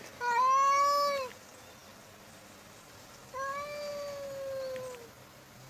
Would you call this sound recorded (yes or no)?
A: yes